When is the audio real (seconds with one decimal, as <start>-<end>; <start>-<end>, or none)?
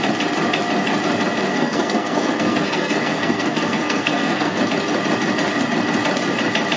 0.0-1.5; 4.6-6.8